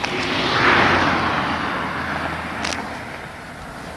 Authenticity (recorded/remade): recorded